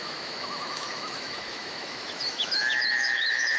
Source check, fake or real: fake